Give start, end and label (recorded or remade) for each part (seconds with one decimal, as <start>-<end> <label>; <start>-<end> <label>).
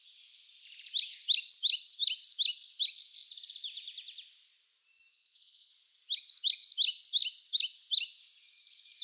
0.0-5.1 recorded; 5.1-5.7 remade; 5.7-9.0 recorded